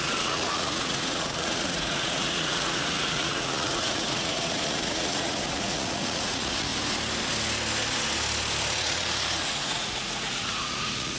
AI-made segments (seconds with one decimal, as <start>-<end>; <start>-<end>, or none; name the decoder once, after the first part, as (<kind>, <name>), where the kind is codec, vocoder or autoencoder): 0.0-6.7 (vocoder, Vocos); 8.7-11.2